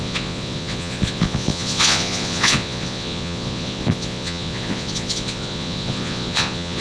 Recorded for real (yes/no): no